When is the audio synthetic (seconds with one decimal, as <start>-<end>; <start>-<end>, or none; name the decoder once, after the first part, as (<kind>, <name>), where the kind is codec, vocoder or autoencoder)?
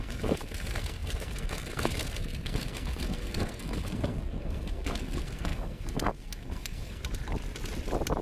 0.0-7.0 (codec, SNAC)